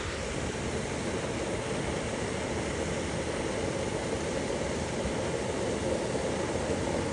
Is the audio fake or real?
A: real